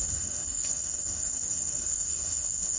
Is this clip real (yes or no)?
no